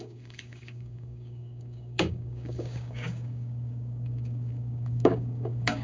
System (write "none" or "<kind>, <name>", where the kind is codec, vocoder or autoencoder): codec, DAC